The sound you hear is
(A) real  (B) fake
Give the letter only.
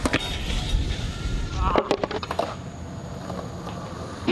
A